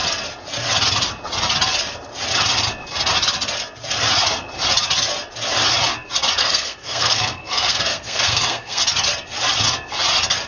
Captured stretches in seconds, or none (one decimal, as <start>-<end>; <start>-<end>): 0.0-6.4; 8.8-10.5